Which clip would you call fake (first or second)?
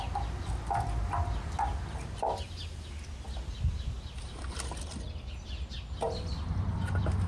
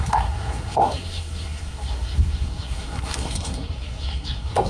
second